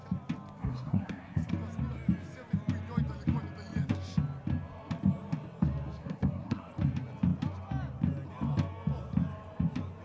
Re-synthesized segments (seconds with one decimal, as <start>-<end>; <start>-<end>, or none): 0.6-1.5; 6.0-6.7